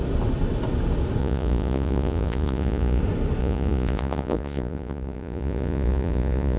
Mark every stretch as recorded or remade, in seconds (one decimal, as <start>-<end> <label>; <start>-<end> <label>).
0.0-1.2 recorded; 1.2-3.0 remade; 3.0-3.4 recorded; 3.4-6.6 remade